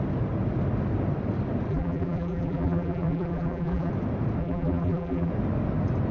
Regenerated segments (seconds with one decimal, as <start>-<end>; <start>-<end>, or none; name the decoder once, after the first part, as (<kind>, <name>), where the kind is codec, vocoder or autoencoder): 1.7-3.9 (vocoder, BigVGAN v2); 4.4-5.3